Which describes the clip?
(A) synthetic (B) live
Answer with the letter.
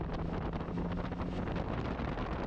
B